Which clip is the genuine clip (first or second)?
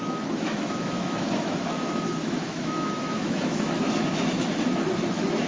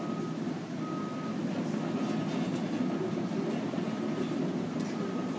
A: second